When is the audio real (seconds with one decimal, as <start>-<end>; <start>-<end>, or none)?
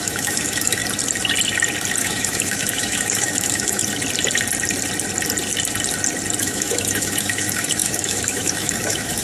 0.8-2.0; 3.8-6.4